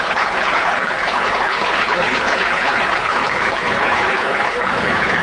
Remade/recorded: remade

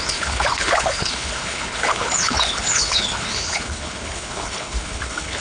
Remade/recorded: remade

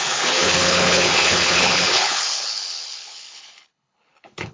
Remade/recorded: remade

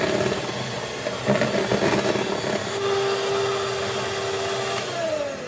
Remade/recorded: recorded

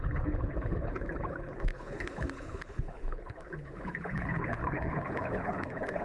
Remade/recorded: remade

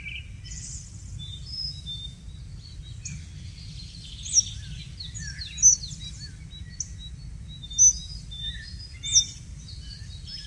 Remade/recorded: recorded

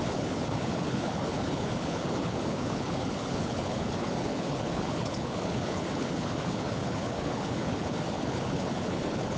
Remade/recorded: remade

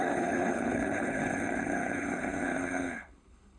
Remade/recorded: remade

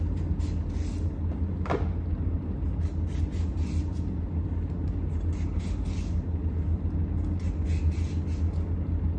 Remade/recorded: recorded